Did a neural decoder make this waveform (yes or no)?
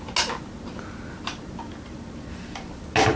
no